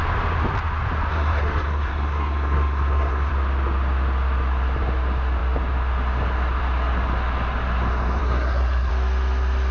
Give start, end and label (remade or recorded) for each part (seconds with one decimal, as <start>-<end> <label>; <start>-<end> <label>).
0.0-1.1 recorded; 1.1-3.3 remade; 3.3-8.2 recorded; 8.2-8.9 remade; 8.9-9.7 recorded

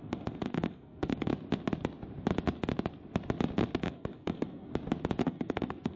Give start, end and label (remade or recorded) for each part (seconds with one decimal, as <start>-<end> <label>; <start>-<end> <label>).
0.0-1.3 remade; 1.3-3.8 recorded; 3.8-4.7 remade; 4.7-5.2 recorded; 5.2-6.0 remade